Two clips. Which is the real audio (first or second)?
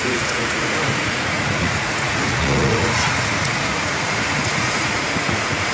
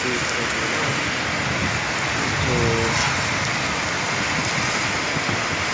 second